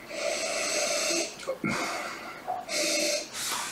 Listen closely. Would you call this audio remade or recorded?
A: recorded